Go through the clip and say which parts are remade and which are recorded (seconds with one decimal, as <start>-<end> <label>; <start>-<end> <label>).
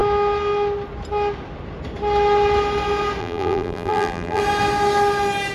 0.0-3.2 recorded; 3.2-4.4 remade; 4.4-5.5 recorded